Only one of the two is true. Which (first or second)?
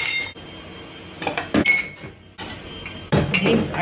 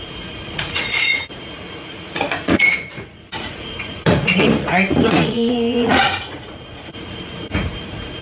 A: first